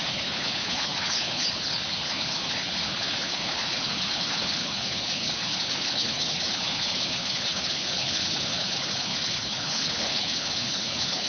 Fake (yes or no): yes